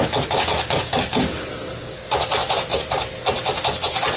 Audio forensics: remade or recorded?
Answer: recorded